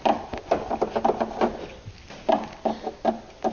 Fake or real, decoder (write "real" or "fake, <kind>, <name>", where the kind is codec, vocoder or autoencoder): real